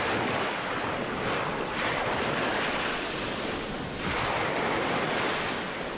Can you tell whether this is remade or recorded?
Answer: recorded